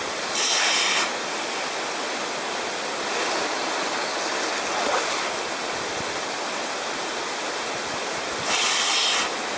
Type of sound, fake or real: real